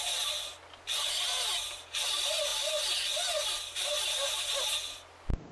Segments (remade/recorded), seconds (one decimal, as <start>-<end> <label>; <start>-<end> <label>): 0.0-5.5 recorded